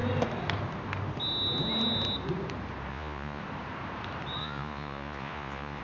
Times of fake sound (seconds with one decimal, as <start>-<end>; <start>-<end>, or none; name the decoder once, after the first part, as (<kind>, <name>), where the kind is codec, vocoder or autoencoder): 2.9-3.4 (vocoder, Vocos); 4.4-5.8